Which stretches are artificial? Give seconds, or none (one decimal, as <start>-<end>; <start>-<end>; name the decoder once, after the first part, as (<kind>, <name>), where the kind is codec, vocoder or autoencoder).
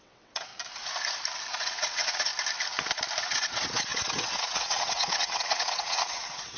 0.0-0.5 (vocoder, WaveNeXt); 1.5-2.3; 3.2-6.6